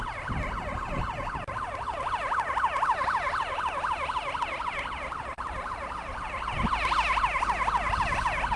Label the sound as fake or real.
real